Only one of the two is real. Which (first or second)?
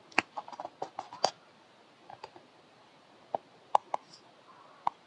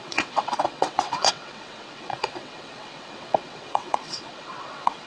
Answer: first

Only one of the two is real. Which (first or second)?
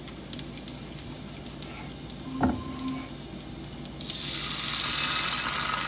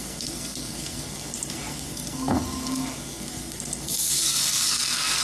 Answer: first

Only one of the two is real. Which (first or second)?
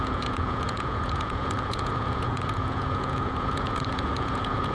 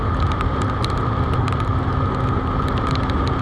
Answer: second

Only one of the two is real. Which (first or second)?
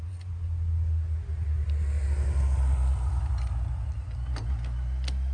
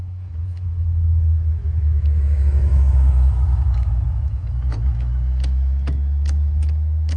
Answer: first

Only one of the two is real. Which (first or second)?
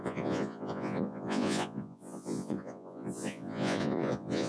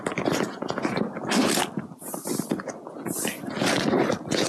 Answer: second